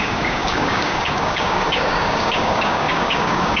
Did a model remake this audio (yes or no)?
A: yes